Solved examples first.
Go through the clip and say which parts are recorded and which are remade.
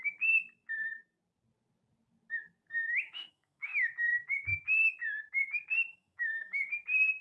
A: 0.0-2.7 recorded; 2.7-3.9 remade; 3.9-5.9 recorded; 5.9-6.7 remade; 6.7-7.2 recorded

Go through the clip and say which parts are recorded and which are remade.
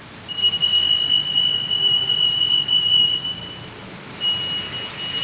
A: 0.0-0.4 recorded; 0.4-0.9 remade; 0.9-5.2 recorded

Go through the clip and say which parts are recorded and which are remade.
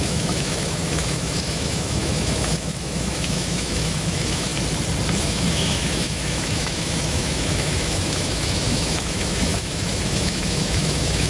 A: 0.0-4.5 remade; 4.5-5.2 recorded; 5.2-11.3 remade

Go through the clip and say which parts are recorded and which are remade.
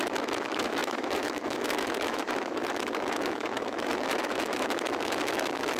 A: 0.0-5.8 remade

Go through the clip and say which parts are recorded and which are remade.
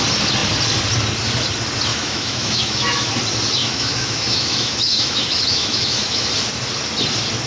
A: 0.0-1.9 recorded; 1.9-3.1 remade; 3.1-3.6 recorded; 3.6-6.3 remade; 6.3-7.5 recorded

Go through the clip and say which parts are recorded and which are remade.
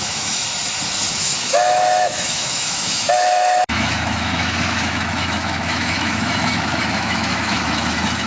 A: 0.0-0.4 remade; 0.4-1.1 recorded; 1.1-8.3 remade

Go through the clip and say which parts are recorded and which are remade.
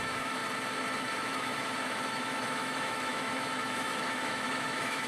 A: 0.0-0.4 remade; 0.4-1.0 recorded; 1.0-5.1 remade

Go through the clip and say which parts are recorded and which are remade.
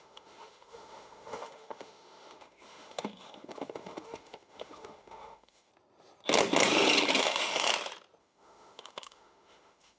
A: 0.0-5.7 remade; 5.7-7.2 recorded; 7.2-7.7 remade; 7.7-8.2 recorded; 8.2-10.0 remade